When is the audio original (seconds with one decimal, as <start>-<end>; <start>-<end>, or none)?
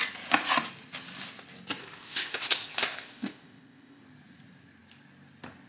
0.0-1.8; 4.0-5.7